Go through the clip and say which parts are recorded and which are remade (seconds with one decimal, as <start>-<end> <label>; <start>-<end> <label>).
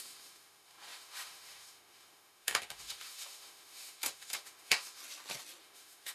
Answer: 0.0-5.0 remade; 5.0-5.6 recorded; 5.6-6.1 remade